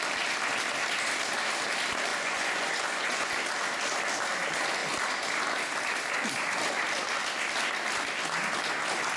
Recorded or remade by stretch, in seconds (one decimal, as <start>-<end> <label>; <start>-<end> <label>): 0.0-2.1 recorded; 2.1-3.3 remade; 3.3-9.2 recorded